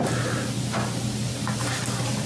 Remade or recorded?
recorded